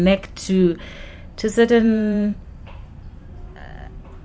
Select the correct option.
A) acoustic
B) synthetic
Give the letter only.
B